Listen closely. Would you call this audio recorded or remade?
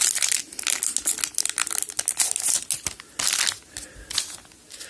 recorded